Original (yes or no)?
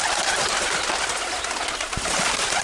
yes